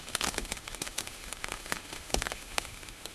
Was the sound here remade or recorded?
remade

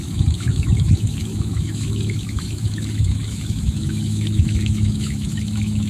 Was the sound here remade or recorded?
remade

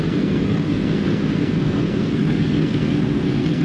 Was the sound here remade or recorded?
remade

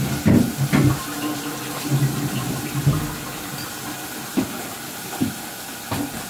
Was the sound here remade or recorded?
recorded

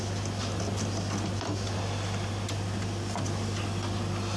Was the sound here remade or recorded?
recorded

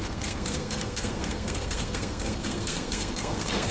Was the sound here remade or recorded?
remade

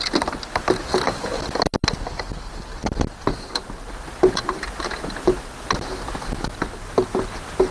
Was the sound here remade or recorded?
recorded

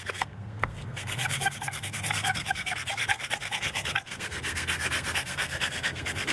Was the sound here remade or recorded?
remade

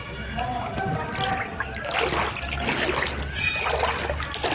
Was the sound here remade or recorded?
recorded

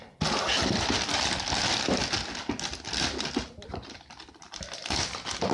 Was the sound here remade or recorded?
recorded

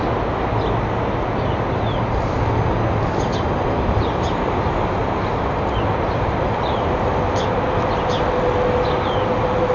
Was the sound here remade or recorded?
recorded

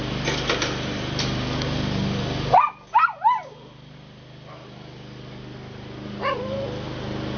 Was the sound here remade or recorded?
recorded